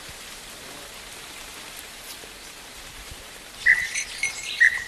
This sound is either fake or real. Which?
fake